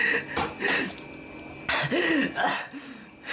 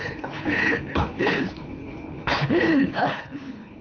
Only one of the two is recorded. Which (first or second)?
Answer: first